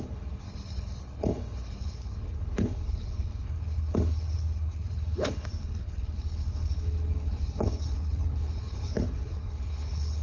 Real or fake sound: fake